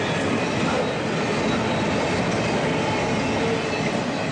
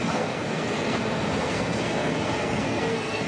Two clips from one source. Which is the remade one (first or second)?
second